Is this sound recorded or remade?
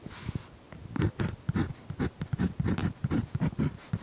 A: recorded